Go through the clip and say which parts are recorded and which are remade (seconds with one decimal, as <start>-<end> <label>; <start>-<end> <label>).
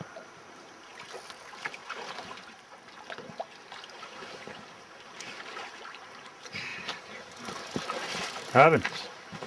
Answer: 0.0-0.9 remade; 0.9-1.4 recorded; 1.4-9.5 remade